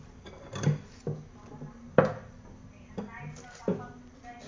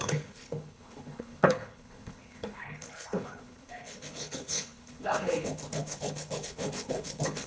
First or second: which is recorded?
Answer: first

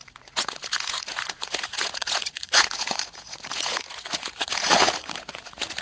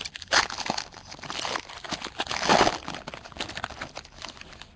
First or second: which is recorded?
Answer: second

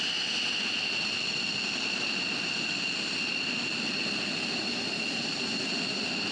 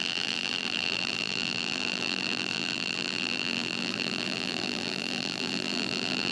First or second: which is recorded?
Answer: first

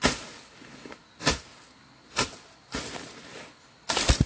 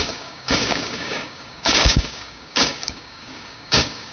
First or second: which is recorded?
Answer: first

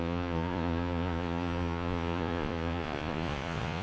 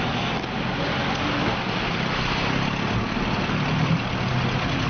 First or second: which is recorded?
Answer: second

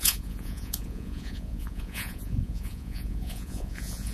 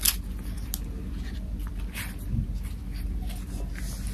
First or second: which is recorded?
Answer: second